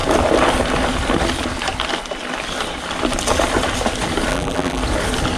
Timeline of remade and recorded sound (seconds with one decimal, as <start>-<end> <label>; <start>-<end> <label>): 0.0-4.3 recorded; 4.3-4.8 remade; 4.8-5.4 recorded